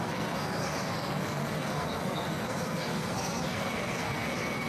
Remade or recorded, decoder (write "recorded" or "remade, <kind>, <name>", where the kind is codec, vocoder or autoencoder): remade, codec, SNAC